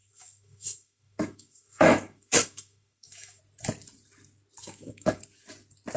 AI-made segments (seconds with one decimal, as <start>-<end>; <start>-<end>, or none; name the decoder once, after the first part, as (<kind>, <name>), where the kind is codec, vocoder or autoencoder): 0.0-3.4 (autoencoder, DAC-VAE); 4.6-5.2